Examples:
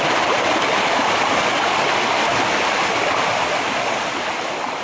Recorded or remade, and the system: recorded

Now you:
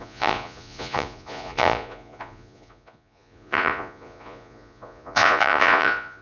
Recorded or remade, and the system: remade, vocoder, Vocos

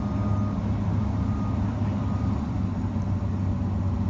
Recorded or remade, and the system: recorded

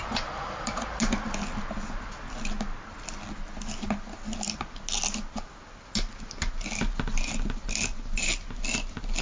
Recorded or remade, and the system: recorded